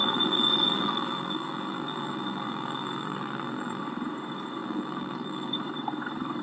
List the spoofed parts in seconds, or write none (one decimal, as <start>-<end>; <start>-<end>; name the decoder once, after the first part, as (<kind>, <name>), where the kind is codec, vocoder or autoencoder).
0.0-3.8 (vocoder, BigVGAN v2); 4.6-5.5